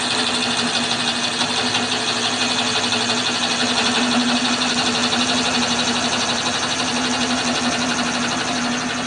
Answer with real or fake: real